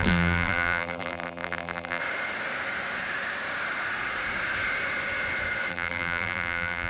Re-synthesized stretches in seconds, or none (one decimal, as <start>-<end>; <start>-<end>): 0.0-2.0; 5.7-6.9